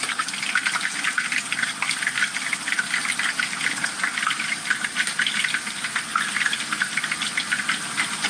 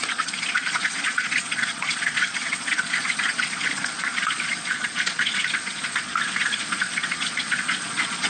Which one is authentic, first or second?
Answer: first